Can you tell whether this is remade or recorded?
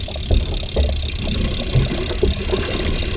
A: recorded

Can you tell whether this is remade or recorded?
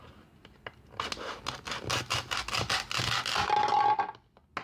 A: recorded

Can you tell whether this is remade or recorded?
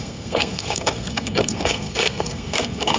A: remade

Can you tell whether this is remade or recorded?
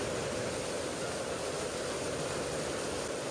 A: recorded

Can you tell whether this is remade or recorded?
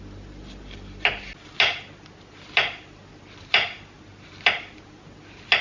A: recorded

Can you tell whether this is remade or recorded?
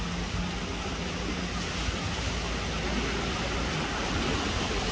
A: recorded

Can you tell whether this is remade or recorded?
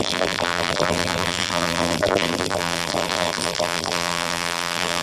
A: remade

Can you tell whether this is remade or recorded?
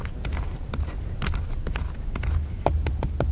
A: recorded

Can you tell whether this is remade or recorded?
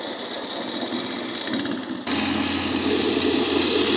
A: recorded